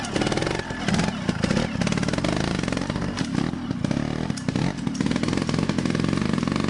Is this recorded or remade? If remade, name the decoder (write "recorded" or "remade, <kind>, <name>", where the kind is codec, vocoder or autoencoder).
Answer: recorded